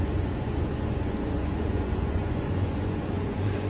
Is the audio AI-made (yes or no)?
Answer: yes